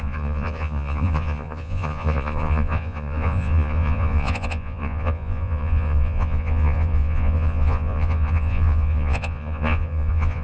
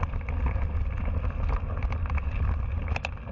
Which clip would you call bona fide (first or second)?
second